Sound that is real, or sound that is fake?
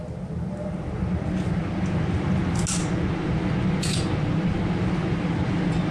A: real